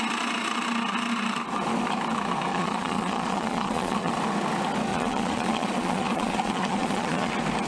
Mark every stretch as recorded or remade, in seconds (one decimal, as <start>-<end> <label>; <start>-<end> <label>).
0.0-2.5 recorded; 2.5-4.1 remade; 4.1-4.9 recorded; 4.9-7.3 remade; 7.3-7.7 recorded